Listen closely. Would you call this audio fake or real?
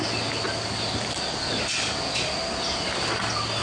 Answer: real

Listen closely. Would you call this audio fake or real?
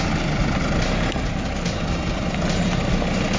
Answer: real